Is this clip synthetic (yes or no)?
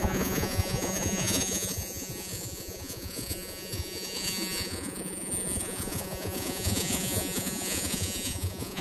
yes